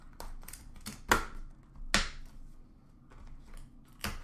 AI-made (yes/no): no